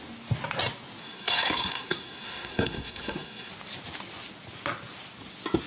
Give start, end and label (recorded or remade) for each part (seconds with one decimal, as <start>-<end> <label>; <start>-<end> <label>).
0.0-1.0 recorded; 1.0-3.5 remade; 3.5-5.7 recorded

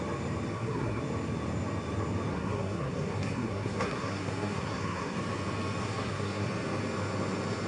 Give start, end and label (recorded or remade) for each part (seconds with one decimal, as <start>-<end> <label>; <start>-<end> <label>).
0.0-0.5 recorded; 0.5-1.0 remade; 1.0-2.3 recorded; 2.3-5.2 remade; 5.2-5.8 recorded; 5.8-6.5 remade; 6.5-7.7 recorded